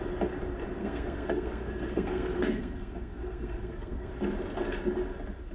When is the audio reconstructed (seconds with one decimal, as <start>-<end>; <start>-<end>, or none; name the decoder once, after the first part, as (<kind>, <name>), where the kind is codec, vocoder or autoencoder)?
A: 0.8-4.1 (codec, SNAC)